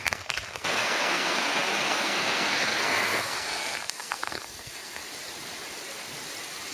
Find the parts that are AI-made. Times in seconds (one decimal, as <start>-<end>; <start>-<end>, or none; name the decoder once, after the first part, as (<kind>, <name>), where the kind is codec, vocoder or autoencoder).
0.0-5.0 (codec, SNAC)